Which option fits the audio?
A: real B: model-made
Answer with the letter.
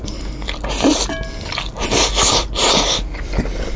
A